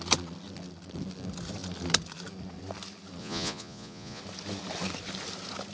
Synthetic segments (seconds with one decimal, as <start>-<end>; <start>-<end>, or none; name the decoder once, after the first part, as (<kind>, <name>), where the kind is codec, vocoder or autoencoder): 3.2-4.2 (vocoder, Vocos)